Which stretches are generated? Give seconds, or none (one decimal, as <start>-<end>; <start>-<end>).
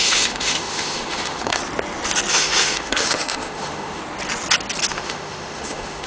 0.0-1.6; 2.3-4.0; 4.9-6.1